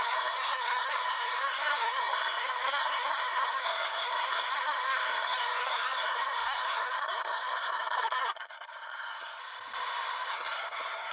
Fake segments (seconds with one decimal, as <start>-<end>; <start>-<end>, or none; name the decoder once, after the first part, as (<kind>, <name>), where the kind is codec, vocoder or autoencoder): 0.0-9.4 (codec, SNAC); 10.3-11.1